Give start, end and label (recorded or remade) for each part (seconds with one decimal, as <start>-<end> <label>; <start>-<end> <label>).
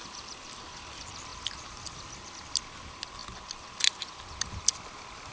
0.0-5.3 recorded